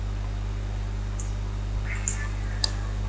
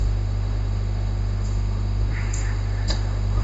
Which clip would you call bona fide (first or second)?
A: first